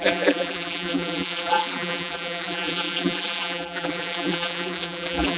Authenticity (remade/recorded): remade